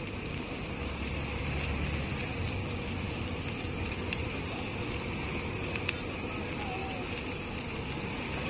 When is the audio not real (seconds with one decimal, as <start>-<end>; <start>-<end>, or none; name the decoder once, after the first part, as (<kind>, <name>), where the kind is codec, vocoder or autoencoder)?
none